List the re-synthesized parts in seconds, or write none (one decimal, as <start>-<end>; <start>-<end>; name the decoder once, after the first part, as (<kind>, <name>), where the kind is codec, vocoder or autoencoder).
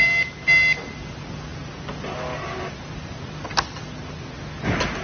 none